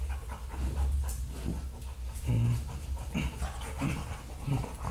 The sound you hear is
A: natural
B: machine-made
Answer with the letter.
A